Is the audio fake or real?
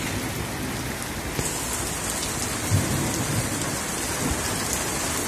real